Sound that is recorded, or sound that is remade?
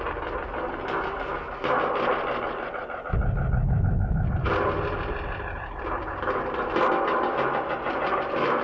recorded